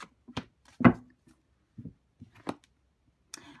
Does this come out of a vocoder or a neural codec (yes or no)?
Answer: no